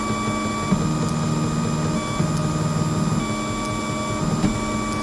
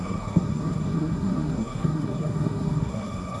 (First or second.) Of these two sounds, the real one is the first